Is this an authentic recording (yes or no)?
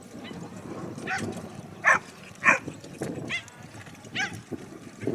yes